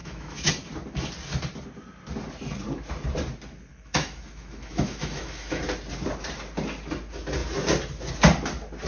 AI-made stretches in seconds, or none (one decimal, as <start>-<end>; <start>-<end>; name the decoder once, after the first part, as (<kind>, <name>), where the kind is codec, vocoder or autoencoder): 0.0-0.5 (autoencoder, DAC-VAE); 3.7-5.6